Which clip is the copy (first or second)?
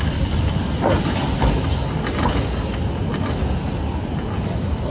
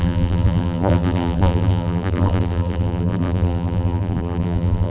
second